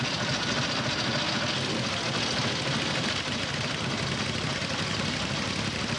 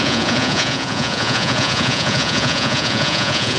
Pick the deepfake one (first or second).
second